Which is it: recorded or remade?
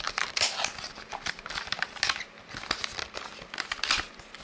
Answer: recorded